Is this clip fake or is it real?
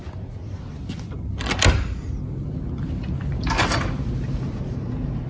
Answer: real